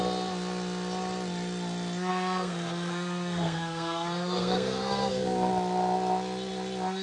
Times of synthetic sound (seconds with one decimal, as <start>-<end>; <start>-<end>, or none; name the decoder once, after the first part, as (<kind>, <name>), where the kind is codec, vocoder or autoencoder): 2.1-5.5 (codec, SNAC)